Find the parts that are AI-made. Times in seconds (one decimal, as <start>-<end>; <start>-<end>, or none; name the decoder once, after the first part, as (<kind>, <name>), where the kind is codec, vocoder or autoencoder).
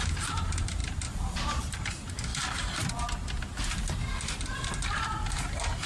0.0-0.8 (vocoder, BigVGAN v2); 1.6-2.3; 4.1-5.9